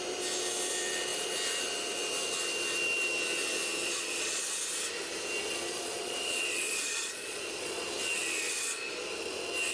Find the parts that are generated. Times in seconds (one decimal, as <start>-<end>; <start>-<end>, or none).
3.8-4.4; 5.5-7.8